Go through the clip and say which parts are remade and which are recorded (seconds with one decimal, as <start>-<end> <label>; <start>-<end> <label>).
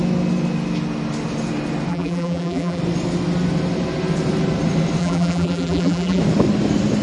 0.0-1.9 recorded; 1.9-2.8 remade; 2.8-5.0 recorded; 5.0-6.2 remade; 6.2-7.0 recorded